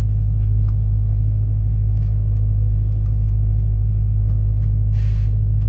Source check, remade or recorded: remade